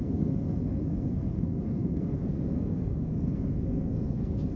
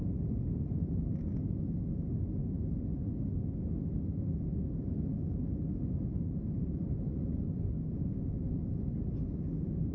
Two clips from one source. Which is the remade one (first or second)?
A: first